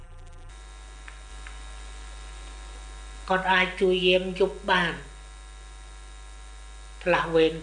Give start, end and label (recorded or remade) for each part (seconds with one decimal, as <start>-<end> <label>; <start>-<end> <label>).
0.0-0.5 remade; 0.5-7.6 recorded